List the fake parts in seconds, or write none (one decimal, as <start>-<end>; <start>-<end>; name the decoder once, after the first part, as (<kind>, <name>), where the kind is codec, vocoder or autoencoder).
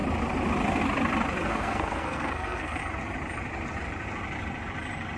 1.5-2.8 (codec, SNAC)